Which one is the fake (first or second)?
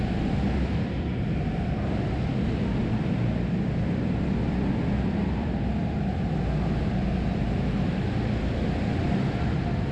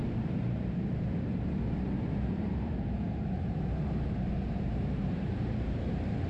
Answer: second